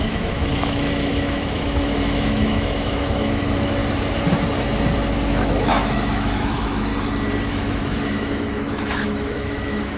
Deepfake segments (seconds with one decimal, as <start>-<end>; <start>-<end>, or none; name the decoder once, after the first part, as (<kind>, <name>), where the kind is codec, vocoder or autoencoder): 0.0-3.8 (autoencoder, DAC-VAE); 5.3-6.9; 7.5-10.0

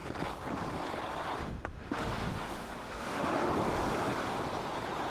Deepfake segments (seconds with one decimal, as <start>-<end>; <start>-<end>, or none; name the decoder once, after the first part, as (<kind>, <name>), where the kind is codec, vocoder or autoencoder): 1.4-3.5 (autoencoder, DAC-VAE)